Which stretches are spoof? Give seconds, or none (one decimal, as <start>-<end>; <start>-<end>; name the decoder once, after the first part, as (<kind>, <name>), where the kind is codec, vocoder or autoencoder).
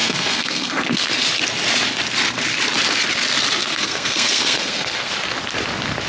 0.0-1.3 (codec, SNAC); 3.6-5.1